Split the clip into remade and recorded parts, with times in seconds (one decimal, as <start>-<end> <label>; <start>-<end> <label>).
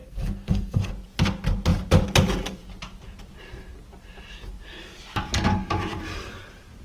0.0-0.9 remade; 0.9-6.8 recorded